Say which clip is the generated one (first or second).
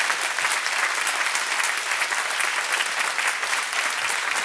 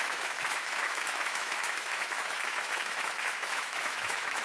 second